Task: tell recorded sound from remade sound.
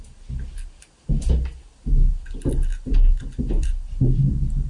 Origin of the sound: recorded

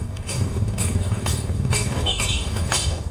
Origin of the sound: remade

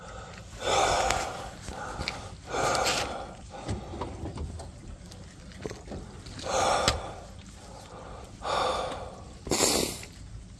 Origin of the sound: recorded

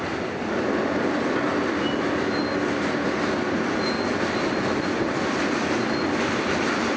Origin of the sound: recorded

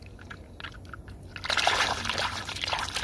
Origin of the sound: recorded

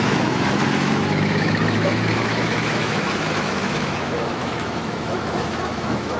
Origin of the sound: remade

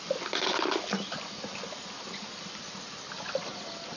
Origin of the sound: recorded